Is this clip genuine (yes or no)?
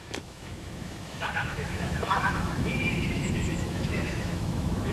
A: no